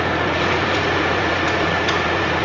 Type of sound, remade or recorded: remade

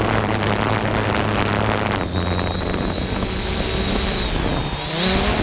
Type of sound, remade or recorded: recorded